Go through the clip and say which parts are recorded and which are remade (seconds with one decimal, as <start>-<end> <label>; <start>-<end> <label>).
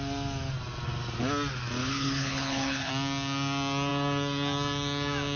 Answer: 0.0-1.8 recorded; 1.8-2.9 remade; 2.9-5.4 recorded